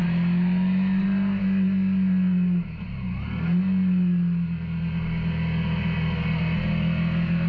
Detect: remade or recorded recorded